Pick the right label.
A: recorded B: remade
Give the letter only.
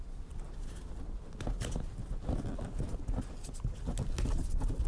A